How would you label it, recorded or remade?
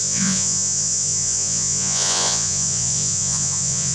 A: remade